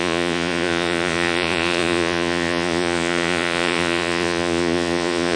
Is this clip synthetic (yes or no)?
yes